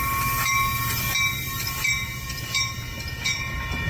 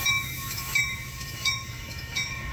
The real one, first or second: first